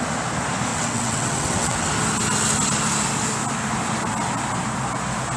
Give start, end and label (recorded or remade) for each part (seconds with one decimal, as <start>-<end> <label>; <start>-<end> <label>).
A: 0.0-0.7 recorded; 0.7-1.9 remade; 1.9-5.4 recorded